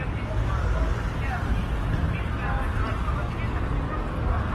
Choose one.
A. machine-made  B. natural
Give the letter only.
B